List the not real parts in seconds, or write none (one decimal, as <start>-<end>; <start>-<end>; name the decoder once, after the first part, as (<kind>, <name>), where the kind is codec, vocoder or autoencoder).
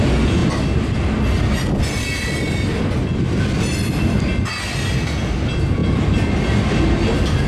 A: none